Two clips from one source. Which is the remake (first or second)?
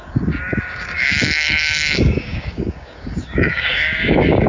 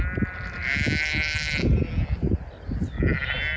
first